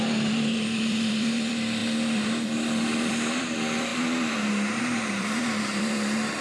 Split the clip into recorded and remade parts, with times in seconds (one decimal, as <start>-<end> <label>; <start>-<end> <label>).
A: 0.0-6.4 remade